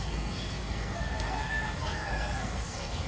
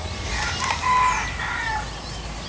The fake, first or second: first